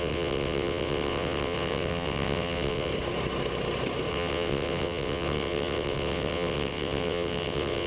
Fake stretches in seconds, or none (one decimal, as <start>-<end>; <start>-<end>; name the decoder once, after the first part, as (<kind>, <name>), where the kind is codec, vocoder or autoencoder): 0.0-2.9 (vocoder, WaveNeXt); 4.1-7.9